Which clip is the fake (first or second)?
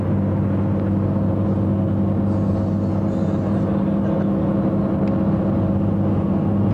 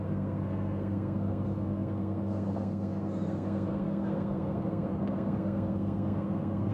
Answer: second